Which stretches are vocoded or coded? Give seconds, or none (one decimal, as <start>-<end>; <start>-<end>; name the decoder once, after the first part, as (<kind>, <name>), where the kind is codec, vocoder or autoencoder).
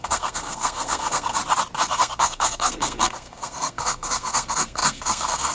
0.0-1.4 (codec, SNAC); 1.9-5.5